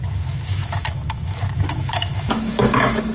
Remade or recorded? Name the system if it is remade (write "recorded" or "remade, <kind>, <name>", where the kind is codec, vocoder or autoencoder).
remade, autoencoder, DAC-VAE